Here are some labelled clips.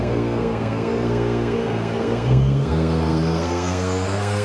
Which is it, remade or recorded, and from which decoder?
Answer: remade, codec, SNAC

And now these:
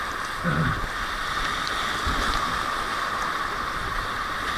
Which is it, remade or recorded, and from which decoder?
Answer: recorded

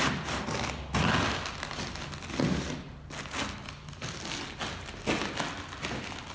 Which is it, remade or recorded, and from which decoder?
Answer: recorded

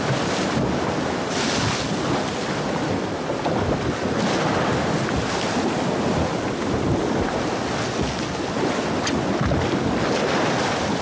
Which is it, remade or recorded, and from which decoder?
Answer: recorded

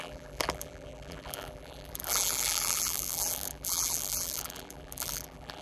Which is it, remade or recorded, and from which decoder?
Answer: remade, vocoder, BigVGAN v2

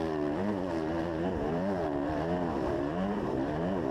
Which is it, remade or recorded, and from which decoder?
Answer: remade, vocoder, BigVGAN v2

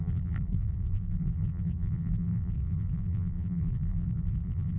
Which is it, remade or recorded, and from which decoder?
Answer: remade, vocoder, BigVGAN v2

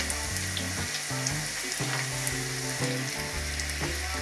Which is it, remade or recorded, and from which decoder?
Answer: recorded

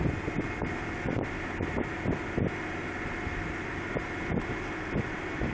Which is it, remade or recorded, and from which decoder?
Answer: recorded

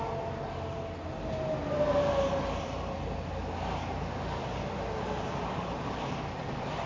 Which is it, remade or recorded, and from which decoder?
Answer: recorded